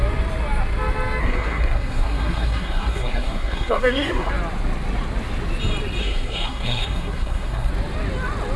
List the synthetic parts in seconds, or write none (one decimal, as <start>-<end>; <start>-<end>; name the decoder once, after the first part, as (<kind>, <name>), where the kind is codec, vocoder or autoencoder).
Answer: 1.2-4.3 (codec, SNAC); 6.0-7.7